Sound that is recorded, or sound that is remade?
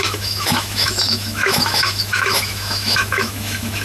remade